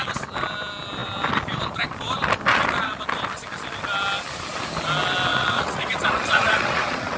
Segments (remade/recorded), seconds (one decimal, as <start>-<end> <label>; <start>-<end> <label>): 0.0-5.3 recorded; 5.3-7.2 remade